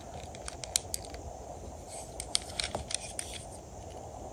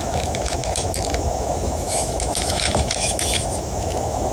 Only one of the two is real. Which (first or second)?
first